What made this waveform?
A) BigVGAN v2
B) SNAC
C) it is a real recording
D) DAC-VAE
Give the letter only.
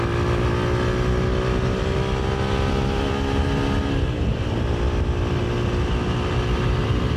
C